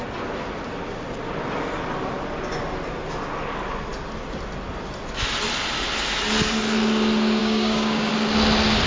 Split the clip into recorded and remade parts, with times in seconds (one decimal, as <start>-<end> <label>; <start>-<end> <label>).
0.0-7.4 recorded; 7.4-8.1 remade; 8.1-8.9 recorded